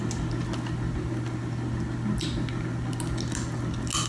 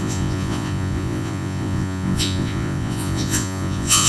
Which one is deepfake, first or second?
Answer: second